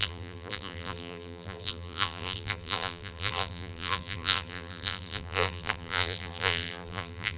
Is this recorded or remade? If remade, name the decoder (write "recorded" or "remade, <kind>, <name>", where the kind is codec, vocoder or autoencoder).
remade, vocoder, BigVGAN v2